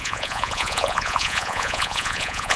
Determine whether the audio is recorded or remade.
remade